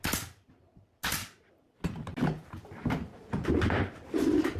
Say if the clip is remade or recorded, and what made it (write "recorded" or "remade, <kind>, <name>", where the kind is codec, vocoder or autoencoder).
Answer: recorded